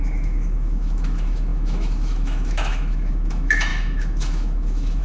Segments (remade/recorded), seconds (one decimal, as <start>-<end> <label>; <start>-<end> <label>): 0.0-5.0 remade